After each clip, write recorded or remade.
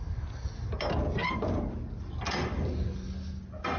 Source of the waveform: recorded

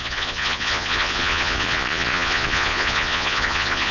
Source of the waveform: remade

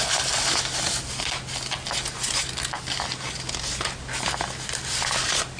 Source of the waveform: recorded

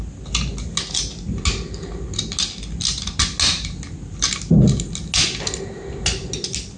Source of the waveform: recorded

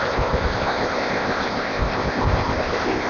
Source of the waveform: remade